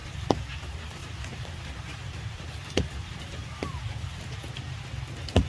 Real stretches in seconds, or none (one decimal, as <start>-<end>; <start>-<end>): 0.6-1.0; 4.3-5.5

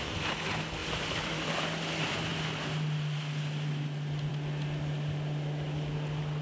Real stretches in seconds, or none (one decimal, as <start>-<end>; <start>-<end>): 0.0-6.4

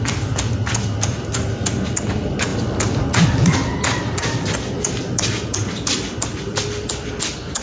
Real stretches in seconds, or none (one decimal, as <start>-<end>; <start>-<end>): 0.0-7.6

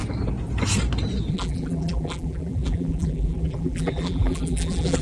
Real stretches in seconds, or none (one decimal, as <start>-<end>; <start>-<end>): 0.0-1.3

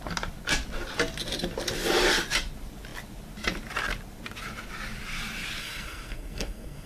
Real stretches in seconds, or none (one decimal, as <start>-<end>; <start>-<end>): 0.0-5.6

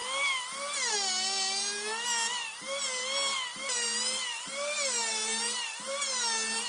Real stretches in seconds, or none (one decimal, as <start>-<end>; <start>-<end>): 0.0-6.7